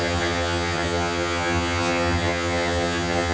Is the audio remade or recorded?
remade